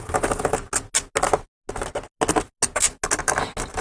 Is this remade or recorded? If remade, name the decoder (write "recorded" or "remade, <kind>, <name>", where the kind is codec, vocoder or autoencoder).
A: recorded